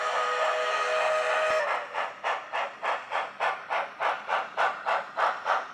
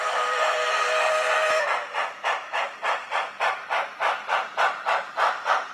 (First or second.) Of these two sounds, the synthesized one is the second